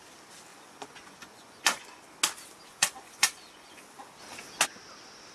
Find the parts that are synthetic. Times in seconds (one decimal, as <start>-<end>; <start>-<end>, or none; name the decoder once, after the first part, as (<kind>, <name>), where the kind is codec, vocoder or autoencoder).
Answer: 0.5-2.0 (vocoder, Vocos); 2.7-3.8